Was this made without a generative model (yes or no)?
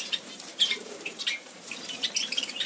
no